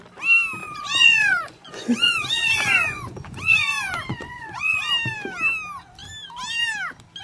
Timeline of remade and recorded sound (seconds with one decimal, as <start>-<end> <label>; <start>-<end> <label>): 0.0-0.6 recorded; 0.6-4.9 remade; 4.9-7.2 recorded